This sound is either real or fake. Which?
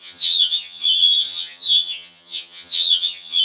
fake